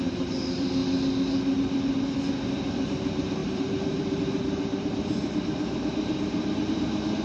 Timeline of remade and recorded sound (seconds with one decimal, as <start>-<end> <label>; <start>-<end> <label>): 0.0-0.8 remade; 0.8-2.4 recorded; 2.4-7.2 remade